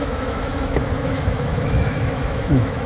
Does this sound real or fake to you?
fake